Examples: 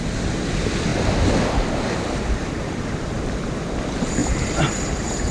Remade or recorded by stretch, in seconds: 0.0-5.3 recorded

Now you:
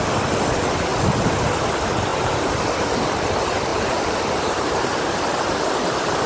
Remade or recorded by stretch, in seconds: 0.0-2.1 recorded; 2.1-2.6 remade; 2.6-3.7 recorded; 3.7-4.9 remade; 4.9-6.3 recorded

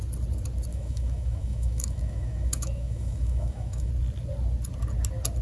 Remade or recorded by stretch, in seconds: 0.0-0.7 recorded; 0.7-3.9 remade; 3.9-5.4 recorded

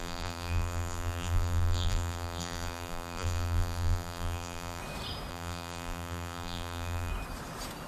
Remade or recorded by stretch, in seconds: 0.0-4.8 remade; 4.8-5.3 recorded; 5.3-7.1 remade; 7.1-7.9 recorded